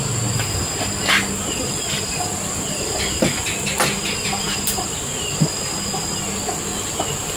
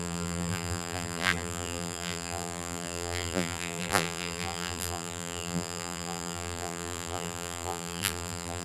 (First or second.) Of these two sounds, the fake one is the second